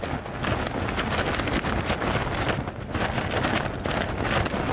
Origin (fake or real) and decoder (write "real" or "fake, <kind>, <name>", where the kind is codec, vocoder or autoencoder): real